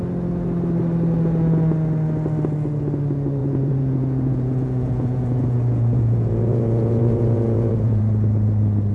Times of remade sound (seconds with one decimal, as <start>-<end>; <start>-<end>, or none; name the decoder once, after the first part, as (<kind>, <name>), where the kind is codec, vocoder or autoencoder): 3.4-8.0 (vocoder, Vocos)